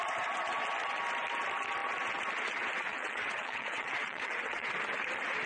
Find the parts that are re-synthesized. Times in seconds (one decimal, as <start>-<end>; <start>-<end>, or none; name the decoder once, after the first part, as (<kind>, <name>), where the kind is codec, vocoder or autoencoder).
2.9-4.7 (vocoder, WaveNeXt)